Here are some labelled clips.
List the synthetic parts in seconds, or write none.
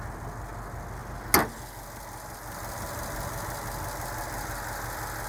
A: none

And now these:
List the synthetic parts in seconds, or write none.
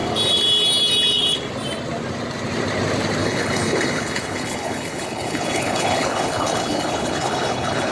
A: 3.2-7.9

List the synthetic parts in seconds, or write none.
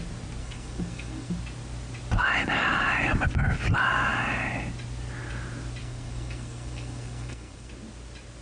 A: 0.4-1.3; 5.8-7.7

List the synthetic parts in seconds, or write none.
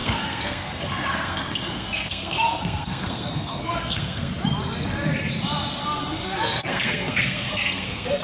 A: 0.0-4.3; 5.8-8.2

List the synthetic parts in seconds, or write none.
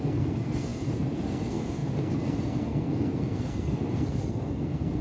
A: 0.0-5.0